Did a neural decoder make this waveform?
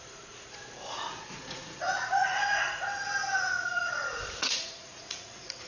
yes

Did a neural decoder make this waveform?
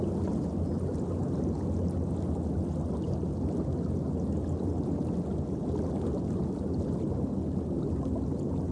no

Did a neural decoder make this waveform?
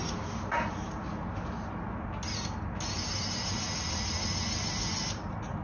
no